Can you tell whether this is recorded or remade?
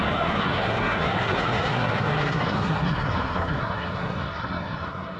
remade